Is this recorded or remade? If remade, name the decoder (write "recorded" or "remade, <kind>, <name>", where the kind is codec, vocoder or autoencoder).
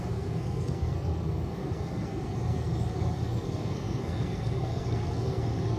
remade, codec, SNAC